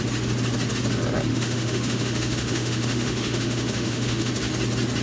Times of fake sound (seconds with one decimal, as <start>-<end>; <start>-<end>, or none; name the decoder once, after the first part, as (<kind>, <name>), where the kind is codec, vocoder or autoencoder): 1.3-4.3 (autoencoder, DAC-VAE)